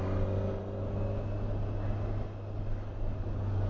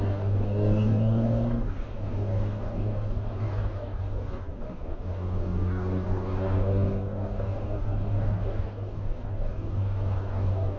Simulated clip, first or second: second